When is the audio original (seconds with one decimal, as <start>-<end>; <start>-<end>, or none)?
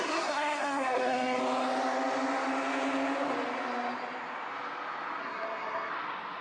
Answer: 1.4-5.2; 5.9-6.4